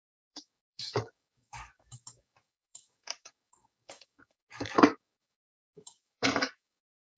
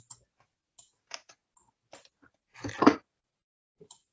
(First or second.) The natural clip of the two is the second